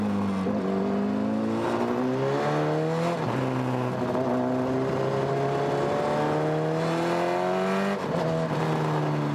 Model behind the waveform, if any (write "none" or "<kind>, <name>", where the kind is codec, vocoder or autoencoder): none